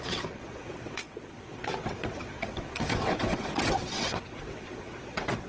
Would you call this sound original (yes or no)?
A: no